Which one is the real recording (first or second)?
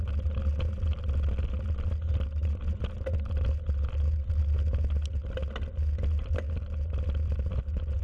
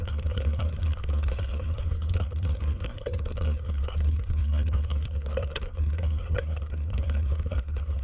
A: first